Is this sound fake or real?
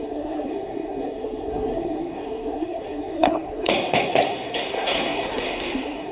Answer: fake